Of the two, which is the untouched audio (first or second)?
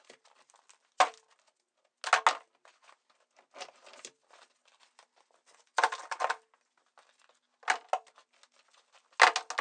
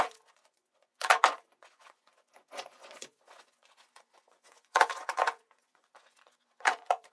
first